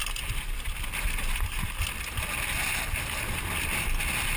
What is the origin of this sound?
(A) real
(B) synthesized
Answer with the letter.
A